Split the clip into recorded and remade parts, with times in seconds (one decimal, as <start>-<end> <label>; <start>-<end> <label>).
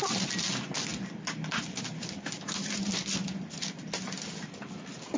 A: 0.0-5.2 recorded